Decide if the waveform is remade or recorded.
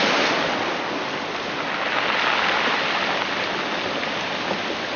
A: recorded